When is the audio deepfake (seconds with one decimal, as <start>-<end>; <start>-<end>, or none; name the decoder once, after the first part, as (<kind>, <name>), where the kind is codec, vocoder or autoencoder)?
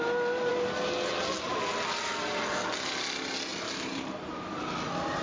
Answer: 3.5-4.5 (vocoder, BigVGAN v2)